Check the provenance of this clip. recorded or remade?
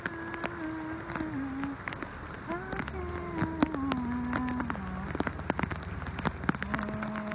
recorded